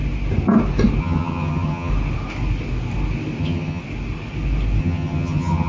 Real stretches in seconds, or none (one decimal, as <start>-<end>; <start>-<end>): 0.0-1.0; 1.9-3.4; 3.8-4.8